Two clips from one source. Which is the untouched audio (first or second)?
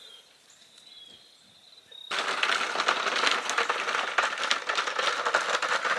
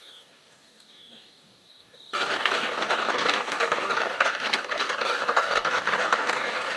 first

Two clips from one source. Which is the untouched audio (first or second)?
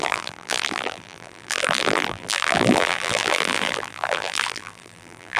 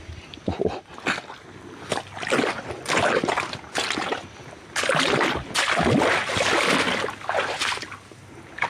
second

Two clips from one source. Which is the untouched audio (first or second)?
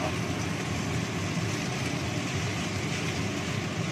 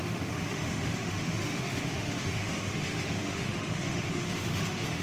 first